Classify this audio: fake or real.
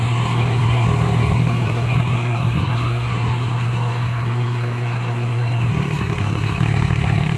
fake